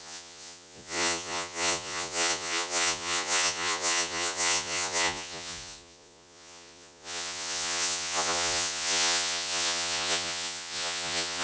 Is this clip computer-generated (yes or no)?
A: yes